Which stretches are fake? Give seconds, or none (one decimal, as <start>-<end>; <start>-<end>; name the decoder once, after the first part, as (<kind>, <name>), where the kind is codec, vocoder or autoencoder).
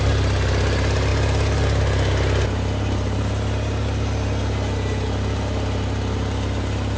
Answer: none